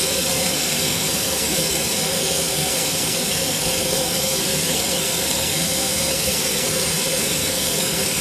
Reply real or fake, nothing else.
fake